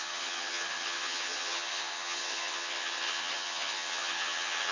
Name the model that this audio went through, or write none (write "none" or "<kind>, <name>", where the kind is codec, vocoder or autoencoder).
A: vocoder, HiFi-GAN